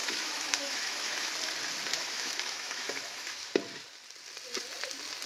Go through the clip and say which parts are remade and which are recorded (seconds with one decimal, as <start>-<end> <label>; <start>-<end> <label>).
0.0-1.3 remade; 1.3-1.9 recorded; 1.9-3.5 remade; 3.5-5.3 recorded